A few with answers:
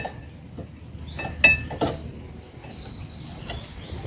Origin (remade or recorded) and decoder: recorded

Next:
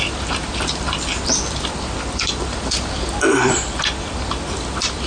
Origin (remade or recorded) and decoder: remade, vocoder, BigVGAN v2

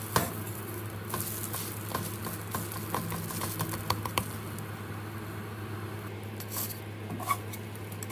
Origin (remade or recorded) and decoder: recorded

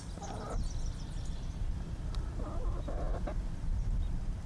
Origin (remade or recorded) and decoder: remade, vocoder, BigVGAN v2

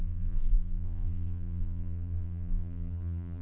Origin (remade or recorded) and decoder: remade, vocoder, BigVGAN v2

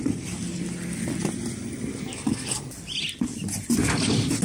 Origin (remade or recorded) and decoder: recorded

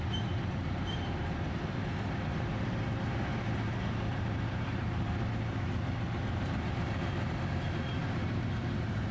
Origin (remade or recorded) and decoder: remade, vocoder, BigVGAN v2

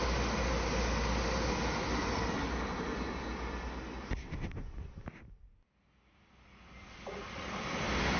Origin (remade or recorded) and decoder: recorded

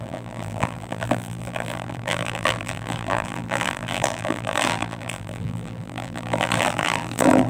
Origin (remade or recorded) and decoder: remade, vocoder, BigVGAN v2